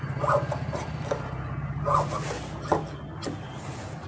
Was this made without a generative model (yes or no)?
yes